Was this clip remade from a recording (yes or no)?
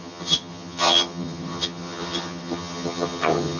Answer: yes